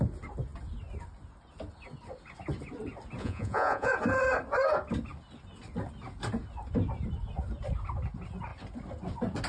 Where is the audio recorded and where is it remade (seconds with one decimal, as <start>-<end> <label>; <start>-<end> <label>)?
0.0-3.2 recorded; 3.2-3.9 remade; 3.9-9.5 recorded